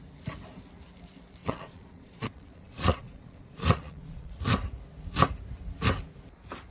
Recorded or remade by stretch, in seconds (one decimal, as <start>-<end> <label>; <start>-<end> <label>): 0.0-1.4 recorded; 1.4-4.4 remade; 4.4-6.7 recorded